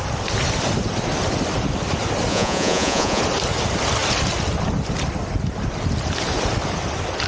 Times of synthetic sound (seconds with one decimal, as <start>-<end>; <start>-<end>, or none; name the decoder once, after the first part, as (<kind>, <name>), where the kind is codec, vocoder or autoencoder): 2.3-3.2 (vocoder, Vocos)